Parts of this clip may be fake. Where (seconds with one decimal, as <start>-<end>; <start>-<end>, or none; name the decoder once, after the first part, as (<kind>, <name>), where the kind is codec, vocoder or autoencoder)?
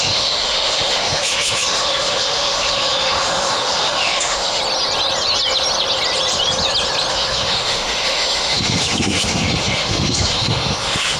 0.0-4.6 (autoencoder, DAC-VAE); 7.1-11.2